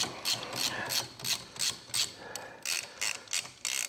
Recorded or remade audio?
recorded